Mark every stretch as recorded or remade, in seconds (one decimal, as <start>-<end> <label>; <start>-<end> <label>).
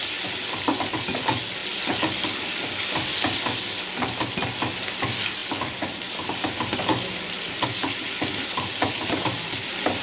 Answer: 0.0-10.0 recorded